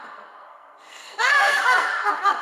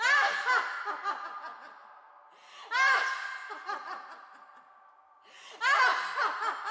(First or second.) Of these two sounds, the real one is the second